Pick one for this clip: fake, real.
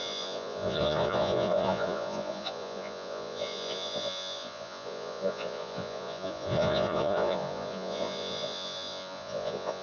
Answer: fake